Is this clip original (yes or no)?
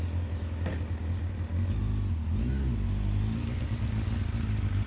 yes